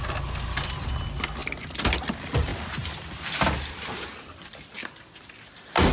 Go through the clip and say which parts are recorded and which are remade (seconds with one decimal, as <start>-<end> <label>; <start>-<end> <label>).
0.0-5.9 recorded